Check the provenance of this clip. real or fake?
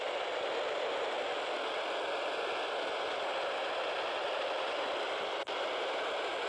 real